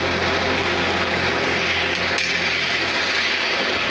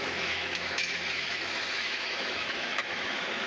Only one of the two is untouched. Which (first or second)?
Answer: first